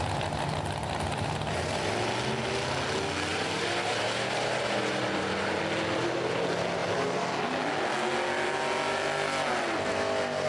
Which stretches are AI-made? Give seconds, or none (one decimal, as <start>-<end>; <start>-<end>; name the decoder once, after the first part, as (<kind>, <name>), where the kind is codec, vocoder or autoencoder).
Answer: 3.3-5.6 (vocoder, BigVGAN v2)